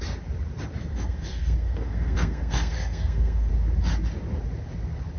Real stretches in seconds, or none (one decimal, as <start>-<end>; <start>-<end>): 0.0-0.9; 3.5-5.2